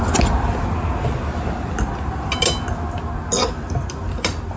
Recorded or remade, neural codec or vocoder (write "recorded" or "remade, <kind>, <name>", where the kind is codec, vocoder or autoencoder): recorded